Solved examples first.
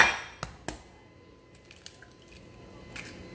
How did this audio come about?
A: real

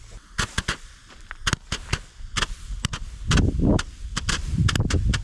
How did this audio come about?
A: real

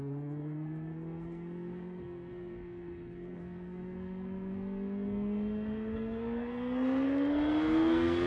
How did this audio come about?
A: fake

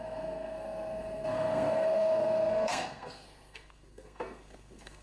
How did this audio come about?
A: fake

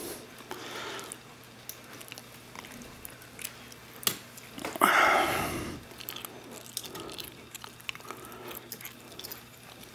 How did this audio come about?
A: real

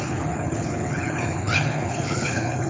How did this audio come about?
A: fake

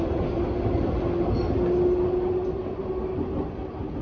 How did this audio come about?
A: real